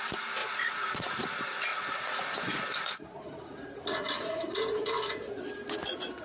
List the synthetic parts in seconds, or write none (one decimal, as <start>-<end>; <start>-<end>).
0.4-1.2; 1.7-5.4